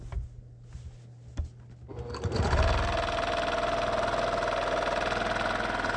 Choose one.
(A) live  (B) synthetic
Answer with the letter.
A